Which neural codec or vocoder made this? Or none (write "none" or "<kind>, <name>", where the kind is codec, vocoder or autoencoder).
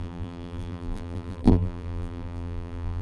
vocoder, BigVGAN v2